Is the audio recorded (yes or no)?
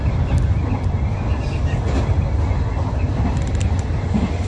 yes